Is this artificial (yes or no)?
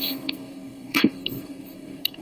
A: yes